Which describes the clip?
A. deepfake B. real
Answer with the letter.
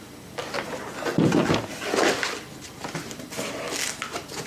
B